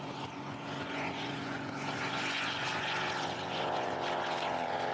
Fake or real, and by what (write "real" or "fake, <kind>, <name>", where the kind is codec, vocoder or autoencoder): fake, vocoder, Vocos